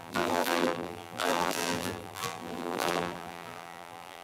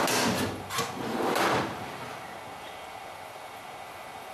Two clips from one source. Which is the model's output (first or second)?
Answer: first